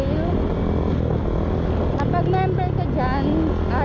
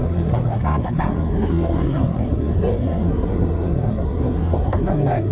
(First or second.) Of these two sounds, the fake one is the second